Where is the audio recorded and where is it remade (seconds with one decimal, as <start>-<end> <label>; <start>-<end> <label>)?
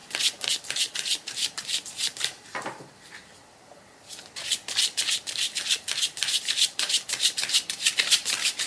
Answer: 0.0-0.5 recorded; 0.5-8.7 remade